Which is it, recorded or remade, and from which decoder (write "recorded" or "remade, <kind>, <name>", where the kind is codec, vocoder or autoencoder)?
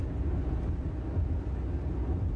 recorded